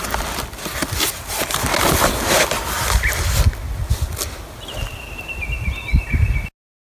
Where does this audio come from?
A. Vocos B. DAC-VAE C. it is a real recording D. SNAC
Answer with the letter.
C